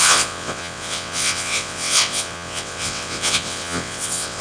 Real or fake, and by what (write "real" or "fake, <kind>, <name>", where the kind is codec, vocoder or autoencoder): fake, vocoder, WaveNeXt